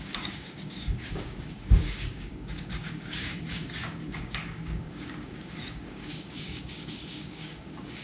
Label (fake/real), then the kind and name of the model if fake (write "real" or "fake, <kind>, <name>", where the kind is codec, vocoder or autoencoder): fake, codec, DAC